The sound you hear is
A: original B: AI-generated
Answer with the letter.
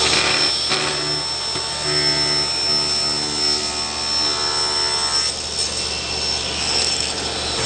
A